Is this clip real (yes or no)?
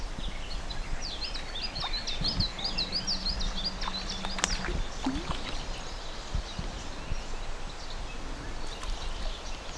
yes